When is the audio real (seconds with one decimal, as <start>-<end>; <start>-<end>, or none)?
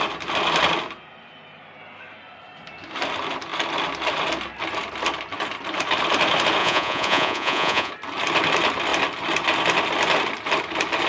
0.0-6.6; 7.9-11.1